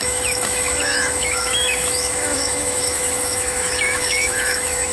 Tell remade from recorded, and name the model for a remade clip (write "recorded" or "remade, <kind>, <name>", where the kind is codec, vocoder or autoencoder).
remade, autoencoder, DAC-VAE